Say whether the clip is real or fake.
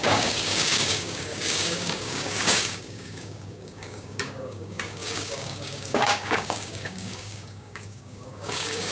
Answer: fake